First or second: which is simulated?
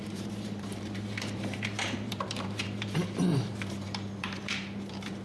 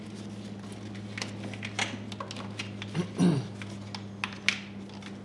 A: first